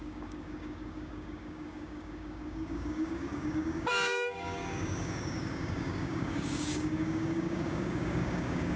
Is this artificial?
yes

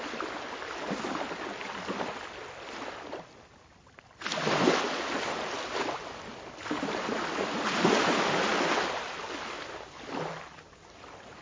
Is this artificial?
no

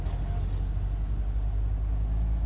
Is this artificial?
no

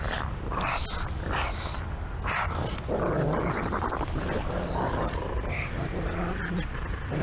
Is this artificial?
no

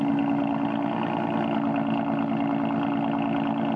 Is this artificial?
no